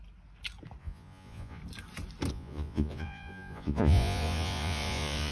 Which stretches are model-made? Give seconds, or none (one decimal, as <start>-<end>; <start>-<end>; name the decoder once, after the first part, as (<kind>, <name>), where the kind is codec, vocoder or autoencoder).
0.8-1.6 (vocoder, Vocos); 2.3-5.3